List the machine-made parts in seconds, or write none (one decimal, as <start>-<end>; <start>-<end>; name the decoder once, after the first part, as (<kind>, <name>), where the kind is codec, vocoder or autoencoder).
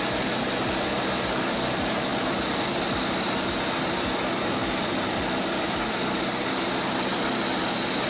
none